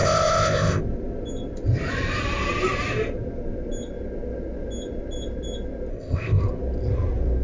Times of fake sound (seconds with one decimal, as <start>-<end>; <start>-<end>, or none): 0.0-0.8; 5.9-6.4